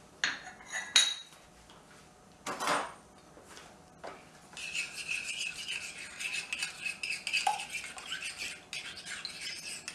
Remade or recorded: recorded